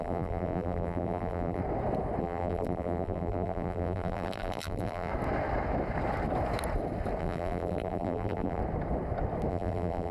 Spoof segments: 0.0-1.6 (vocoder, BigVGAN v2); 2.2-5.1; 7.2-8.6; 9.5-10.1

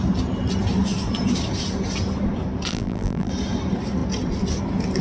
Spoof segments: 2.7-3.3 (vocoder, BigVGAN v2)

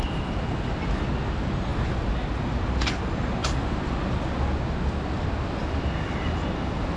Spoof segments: none

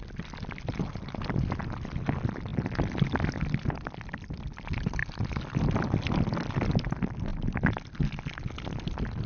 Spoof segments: 0.0-5.0 (vocoder, BigVGAN v2); 5.5-7.3; 8.5-9.3

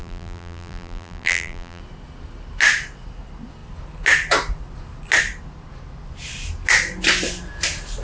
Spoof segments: 0.0-1.8 (vocoder, BigVGAN v2)

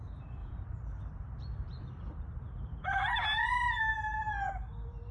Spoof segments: 0.4-3.5 (vocoder, BigVGAN v2)

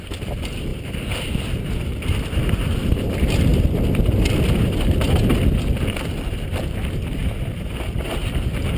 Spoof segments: 0.0-3.5 (vocoder, BigVGAN v2); 5.9-7.2; 8.1-8.8

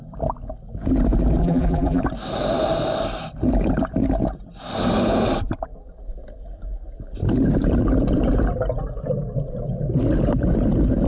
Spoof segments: 1.4-2.0 (vocoder, BigVGAN v2)